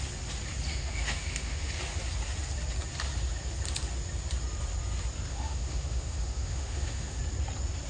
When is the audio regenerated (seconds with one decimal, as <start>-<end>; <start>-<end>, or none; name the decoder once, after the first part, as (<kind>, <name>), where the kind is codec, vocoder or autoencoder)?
0.7-1.7 (autoencoder, DAC-VAE); 5.3-7.2